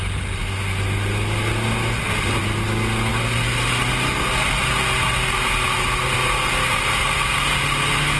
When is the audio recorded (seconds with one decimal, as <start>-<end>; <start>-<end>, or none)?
0.0-8.2